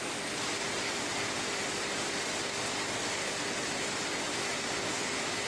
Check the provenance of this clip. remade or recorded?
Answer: recorded